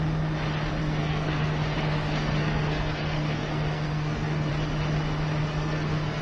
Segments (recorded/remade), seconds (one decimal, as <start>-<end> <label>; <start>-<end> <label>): 0.0-0.8 recorded; 0.8-4.5 remade; 4.5-5.4 recorded; 5.4-6.2 remade